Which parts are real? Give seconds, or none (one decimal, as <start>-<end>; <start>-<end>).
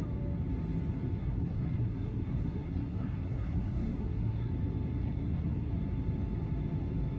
0.0-1.2; 4.5-5.0; 5.7-7.2